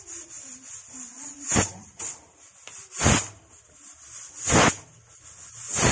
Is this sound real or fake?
real